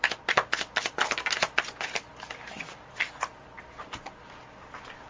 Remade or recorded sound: recorded